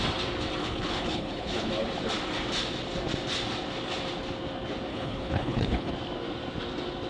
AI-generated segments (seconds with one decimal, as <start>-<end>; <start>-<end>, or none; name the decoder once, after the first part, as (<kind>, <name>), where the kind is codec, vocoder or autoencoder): 0.6-1.7 (codec, HILCodec); 4.9-5.9